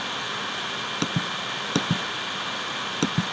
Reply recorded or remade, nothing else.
recorded